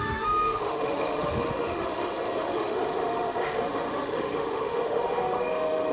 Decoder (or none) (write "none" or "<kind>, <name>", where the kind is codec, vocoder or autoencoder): autoencoder, DAC-VAE